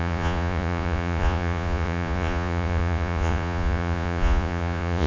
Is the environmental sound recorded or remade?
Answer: remade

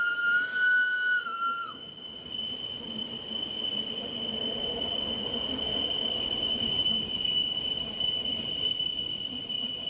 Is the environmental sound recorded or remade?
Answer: recorded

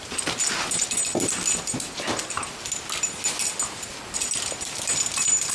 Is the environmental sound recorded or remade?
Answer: recorded